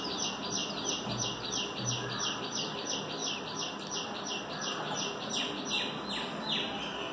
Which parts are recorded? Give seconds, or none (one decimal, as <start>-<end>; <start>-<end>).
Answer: 0.0-7.1